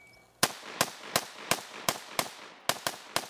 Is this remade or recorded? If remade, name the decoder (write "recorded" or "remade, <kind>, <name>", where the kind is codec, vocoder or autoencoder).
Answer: recorded